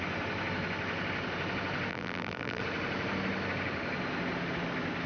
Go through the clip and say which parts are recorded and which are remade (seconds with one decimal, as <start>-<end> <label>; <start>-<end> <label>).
0.0-1.9 recorded; 1.9-2.6 remade; 2.6-5.1 recorded